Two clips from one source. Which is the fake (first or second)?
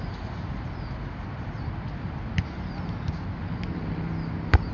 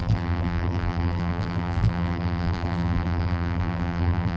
second